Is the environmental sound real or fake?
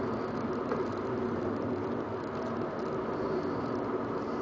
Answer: real